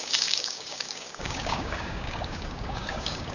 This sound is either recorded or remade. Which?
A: remade